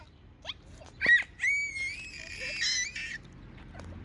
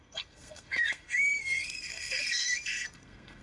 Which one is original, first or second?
first